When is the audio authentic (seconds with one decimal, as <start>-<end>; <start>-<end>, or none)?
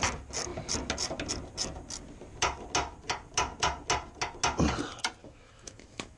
0.0-5.2